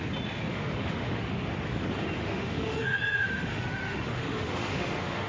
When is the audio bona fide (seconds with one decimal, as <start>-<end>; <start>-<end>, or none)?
0.0-0.5; 1.5-2.2